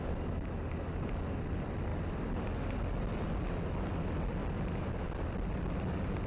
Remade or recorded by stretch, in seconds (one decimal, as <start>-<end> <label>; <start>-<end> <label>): 0.0-6.3 recorded